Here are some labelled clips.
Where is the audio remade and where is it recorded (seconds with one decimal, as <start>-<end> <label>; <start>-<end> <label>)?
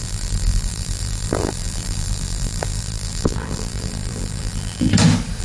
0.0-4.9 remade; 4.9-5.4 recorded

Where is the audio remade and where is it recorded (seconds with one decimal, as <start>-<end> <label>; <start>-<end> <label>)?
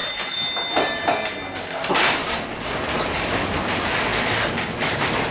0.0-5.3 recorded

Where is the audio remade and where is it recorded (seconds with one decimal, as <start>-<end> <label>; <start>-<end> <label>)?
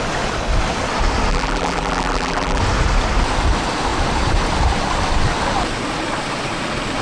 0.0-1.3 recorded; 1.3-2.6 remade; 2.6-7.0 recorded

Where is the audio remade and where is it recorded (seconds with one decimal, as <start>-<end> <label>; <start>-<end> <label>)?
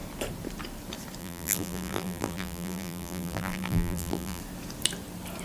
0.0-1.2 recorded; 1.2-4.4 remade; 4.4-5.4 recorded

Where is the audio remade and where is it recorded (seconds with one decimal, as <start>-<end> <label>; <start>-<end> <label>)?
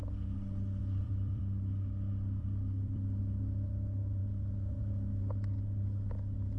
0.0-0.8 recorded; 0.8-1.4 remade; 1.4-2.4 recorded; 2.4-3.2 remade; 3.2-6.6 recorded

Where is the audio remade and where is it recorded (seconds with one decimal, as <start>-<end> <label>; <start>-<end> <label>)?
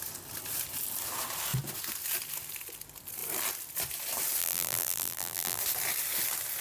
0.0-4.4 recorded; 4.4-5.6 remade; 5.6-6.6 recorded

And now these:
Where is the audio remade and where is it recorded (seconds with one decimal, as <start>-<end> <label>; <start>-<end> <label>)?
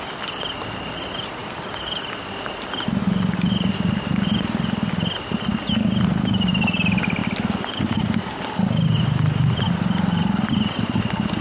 0.0-1.4 recorded; 1.4-2.2 remade; 2.2-11.4 recorded